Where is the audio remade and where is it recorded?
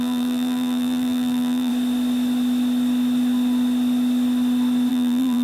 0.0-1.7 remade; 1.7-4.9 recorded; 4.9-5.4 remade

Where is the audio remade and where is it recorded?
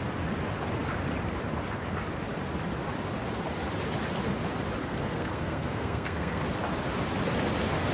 0.0-4.8 recorded; 4.8-6.4 remade; 6.4-7.9 recorded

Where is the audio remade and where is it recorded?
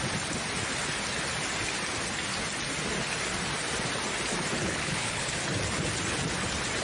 0.0-4.6 recorded; 4.6-5.3 remade; 5.3-6.8 recorded